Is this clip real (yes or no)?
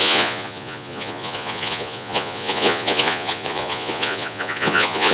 no